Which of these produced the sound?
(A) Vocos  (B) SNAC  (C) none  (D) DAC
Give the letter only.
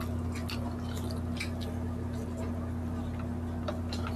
C